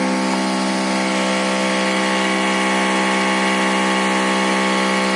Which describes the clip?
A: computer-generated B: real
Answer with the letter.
B